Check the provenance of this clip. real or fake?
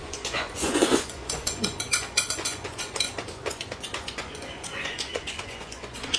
fake